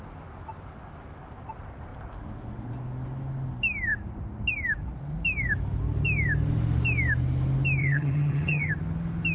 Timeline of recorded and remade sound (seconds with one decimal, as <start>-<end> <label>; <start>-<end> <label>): 0.0-7.8 recorded; 7.8-8.7 remade; 8.7-9.3 recorded